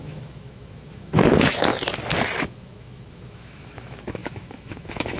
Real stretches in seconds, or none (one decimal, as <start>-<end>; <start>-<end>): 1.7-2.4